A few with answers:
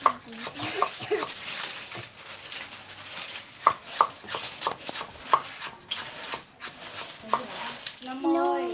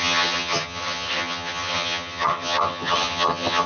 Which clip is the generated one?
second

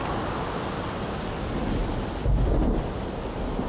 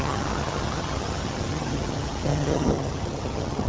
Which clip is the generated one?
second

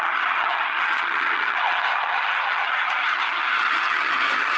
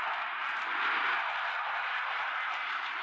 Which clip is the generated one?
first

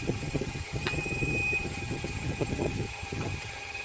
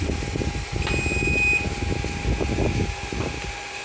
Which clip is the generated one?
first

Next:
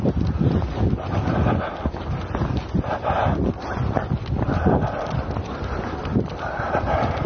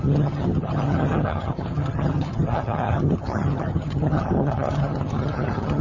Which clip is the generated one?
second